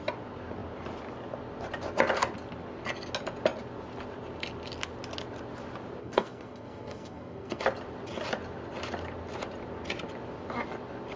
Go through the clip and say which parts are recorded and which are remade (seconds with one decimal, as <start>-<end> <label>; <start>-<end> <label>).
0.0-6.0 recorded; 6.0-7.6 remade; 7.6-11.2 recorded